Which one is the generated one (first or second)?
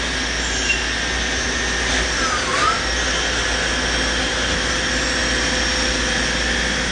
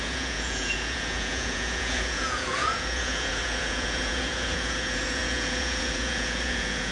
second